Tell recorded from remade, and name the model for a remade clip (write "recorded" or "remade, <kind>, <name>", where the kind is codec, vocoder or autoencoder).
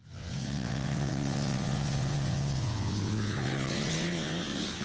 remade, vocoder, WaveNeXt